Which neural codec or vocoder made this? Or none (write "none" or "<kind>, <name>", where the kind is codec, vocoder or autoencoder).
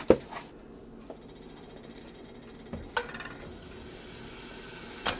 none